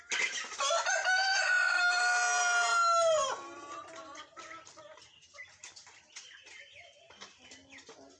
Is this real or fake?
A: real